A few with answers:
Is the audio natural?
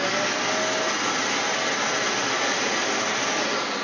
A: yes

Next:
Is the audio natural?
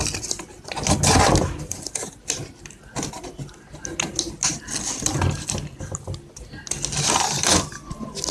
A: yes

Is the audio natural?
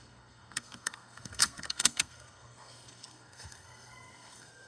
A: no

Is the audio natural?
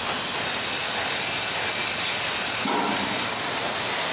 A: yes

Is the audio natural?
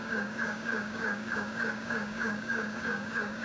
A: no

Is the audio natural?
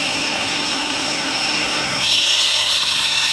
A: no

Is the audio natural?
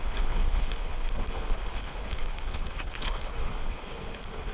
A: no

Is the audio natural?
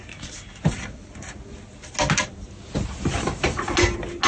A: yes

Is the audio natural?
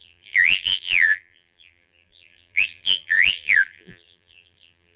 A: no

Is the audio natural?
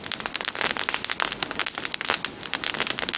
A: yes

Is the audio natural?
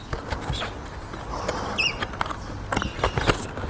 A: yes